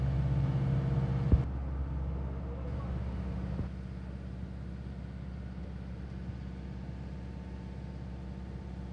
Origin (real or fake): real